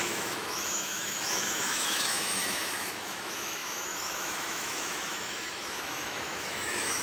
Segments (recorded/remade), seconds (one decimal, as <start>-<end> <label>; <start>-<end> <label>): 0.0-7.0 remade

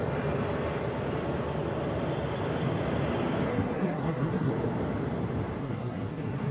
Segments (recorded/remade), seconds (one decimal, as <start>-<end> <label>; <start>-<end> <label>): 0.0-3.5 recorded; 3.5-4.5 remade; 4.5-5.6 recorded; 5.6-6.5 remade

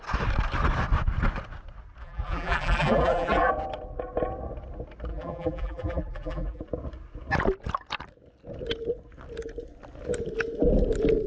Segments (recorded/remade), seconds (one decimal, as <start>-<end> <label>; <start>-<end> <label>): 0.0-2.0 recorded; 2.0-3.5 remade; 3.5-5.1 recorded; 5.1-6.6 remade; 6.6-11.3 recorded

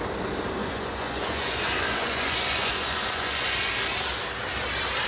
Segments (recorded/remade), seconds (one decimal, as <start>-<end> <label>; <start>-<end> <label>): 0.0-0.6 recorded; 0.6-3.7 remade; 3.7-5.1 recorded

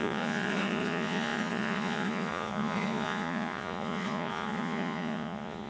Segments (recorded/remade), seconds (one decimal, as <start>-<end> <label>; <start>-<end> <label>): 0.0-5.7 remade